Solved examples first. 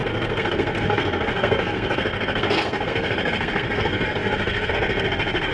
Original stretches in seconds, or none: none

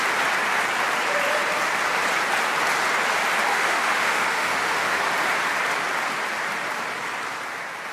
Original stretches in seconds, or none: 0.0-3.5; 5.0-7.9